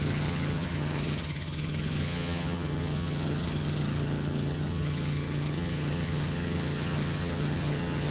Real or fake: fake